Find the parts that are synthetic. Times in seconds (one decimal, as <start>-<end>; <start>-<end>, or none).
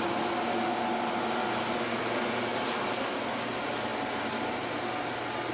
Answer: none